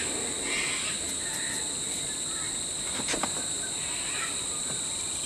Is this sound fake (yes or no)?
no